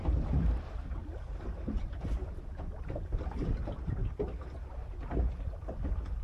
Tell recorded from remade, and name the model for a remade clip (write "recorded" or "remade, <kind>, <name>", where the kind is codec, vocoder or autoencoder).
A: remade, vocoder, BigVGAN v2